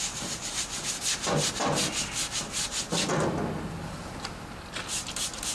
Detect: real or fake real